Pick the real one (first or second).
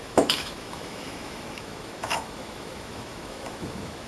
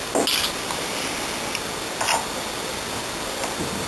second